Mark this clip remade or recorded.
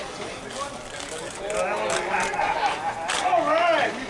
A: recorded